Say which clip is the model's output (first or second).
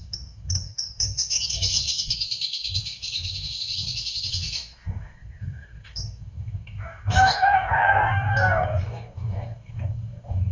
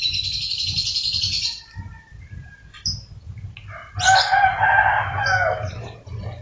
first